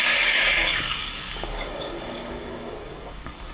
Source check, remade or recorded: remade